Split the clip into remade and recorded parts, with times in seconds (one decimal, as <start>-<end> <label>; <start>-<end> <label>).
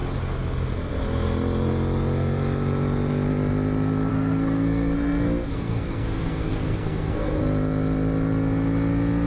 0.0-4.1 recorded; 4.1-7.4 remade; 7.4-9.3 recorded